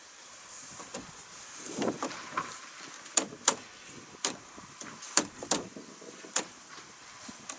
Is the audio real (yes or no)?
no